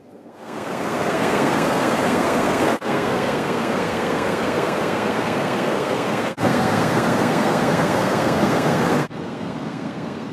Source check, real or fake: fake